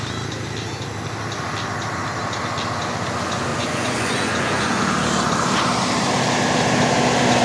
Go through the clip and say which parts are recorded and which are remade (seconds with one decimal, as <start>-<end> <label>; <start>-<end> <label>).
0.0-3.5 recorded; 3.5-4.8 remade; 4.8-7.4 recorded